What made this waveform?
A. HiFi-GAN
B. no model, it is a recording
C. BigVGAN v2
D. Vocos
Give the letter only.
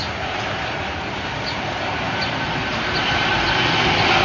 B